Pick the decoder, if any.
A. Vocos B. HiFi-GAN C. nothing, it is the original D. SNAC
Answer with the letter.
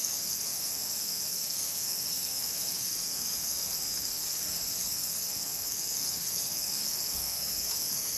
D